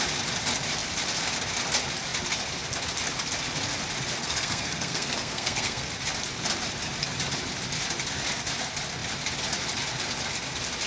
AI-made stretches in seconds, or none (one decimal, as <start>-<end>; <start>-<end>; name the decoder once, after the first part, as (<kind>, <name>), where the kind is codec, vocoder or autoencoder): 4.2-5.9 (codec, SNAC)